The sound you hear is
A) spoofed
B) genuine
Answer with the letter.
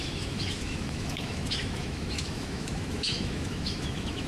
A